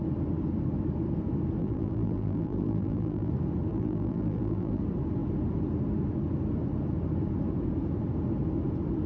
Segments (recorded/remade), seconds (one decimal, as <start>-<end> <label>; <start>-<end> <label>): 0.0-1.6 recorded; 1.6-3.3 remade; 3.3-3.7 recorded; 3.7-4.8 remade; 4.8-9.1 recorded